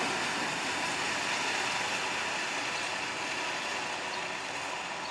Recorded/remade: recorded